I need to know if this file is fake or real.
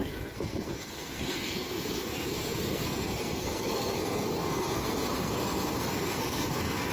fake